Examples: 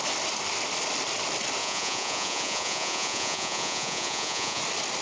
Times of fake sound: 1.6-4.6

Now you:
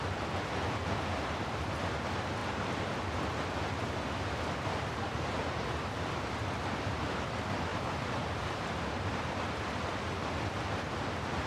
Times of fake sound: 7.7-9.3

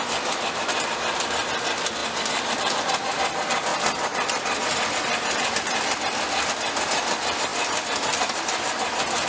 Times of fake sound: 2.0-2.7; 3.7-6.5; 7.5-9.3

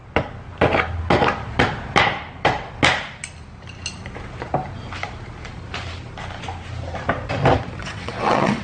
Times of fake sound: 7.8-8.6

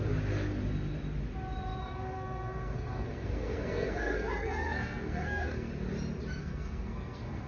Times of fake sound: 1.8-5.7; 6.4-7.5

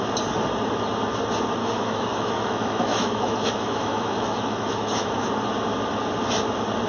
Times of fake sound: 1.6-5.3

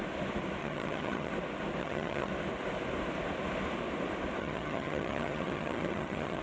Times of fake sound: 0.6-1.3; 1.8-2.3; 4.4-6.4

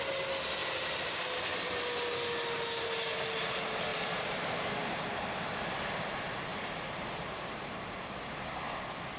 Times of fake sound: 0.6-1.8; 3.9-4.9; 6.5-7.7